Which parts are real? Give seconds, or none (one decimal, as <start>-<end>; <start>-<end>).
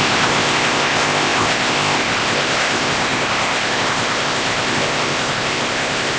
none